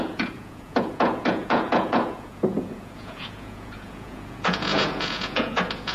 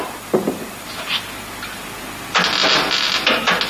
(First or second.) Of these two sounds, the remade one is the first